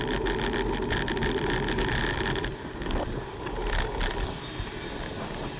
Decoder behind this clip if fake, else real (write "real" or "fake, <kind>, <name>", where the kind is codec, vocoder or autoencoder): real